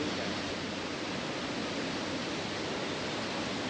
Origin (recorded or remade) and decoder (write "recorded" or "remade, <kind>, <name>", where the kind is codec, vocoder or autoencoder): recorded